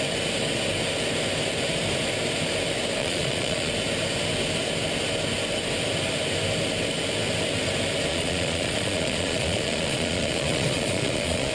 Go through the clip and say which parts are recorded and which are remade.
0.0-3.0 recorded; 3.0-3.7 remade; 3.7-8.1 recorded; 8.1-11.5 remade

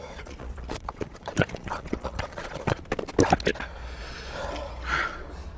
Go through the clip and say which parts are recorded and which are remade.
0.0-2.8 remade; 2.8-5.6 recorded

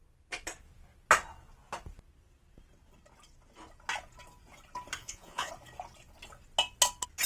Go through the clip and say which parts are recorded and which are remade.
0.0-5.0 recorded; 5.0-5.5 remade; 5.5-7.3 recorded

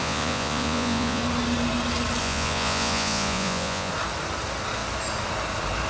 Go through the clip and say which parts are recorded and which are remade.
0.0-1.2 remade; 1.2-2.2 recorded; 2.2-3.9 remade; 3.9-5.9 recorded

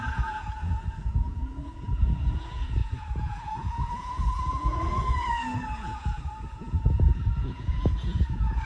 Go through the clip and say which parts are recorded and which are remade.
0.0-8.7 remade

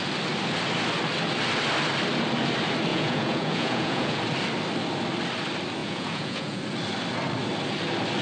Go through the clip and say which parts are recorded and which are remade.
0.0-2.9 recorded; 2.9-4.2 remade; 4.2-5.8 recorded; 5.8-6.6 remade; 6.6-8.2 recorded